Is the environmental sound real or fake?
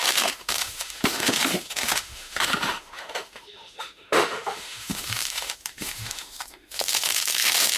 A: fake